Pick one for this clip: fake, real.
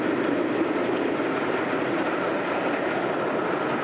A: real